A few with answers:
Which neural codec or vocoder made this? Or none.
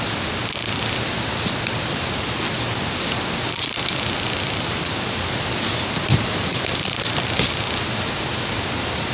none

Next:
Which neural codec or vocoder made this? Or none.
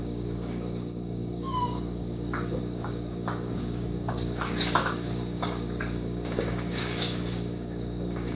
codec, DAC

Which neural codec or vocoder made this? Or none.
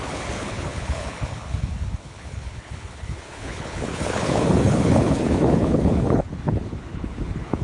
codec, HILCodec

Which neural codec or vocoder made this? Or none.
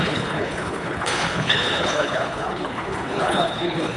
codec, HILCodec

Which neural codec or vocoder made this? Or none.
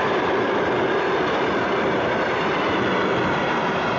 none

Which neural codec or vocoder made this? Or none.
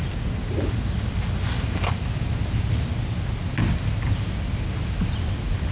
none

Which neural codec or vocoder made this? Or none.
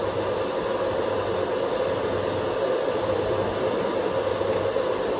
none